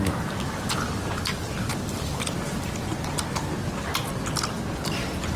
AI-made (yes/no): no